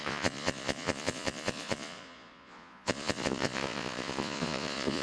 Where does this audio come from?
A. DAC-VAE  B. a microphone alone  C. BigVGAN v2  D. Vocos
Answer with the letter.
D